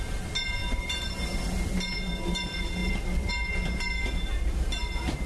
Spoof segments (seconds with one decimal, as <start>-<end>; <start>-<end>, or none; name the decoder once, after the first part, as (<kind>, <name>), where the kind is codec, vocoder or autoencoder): 0.6-1.1 (vocoder, BigVGAN v2); 2.8-3.3